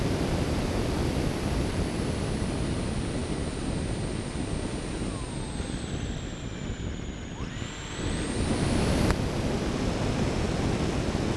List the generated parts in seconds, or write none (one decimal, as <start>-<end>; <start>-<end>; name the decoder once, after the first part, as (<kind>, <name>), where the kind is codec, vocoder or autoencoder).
none